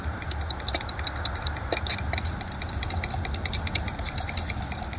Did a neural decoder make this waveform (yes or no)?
no